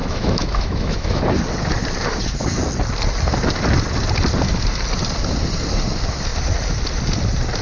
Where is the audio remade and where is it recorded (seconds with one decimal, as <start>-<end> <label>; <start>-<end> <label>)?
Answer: 0.0-1.2 remade; 1.2-7.6 recorded